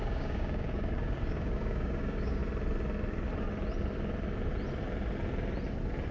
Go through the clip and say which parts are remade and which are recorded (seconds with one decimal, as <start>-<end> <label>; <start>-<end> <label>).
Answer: 0.0-2.4 remade; 2.4-6.1 recorded